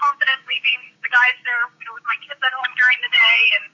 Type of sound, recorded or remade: remade